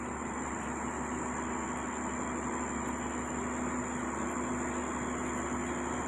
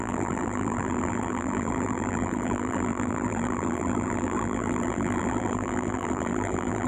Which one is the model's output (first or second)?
second